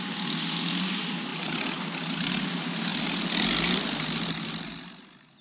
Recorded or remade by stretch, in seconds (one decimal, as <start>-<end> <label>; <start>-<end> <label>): 0.0-2.9 recorded; 2.9-4.8 remade; 4.8-5.4 recorded